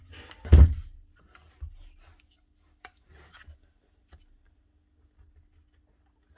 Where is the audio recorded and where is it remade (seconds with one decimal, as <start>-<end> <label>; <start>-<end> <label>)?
0.0-6.4 recorded